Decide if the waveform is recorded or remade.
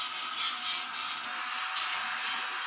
recorded